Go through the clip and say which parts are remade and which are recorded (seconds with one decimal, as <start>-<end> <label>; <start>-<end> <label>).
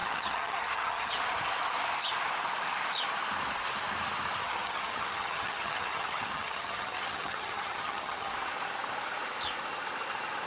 0.0-1.1 remade; 1.1-4.4 recorded; 4.4-8.3 remade; 8.3-10.5 recorded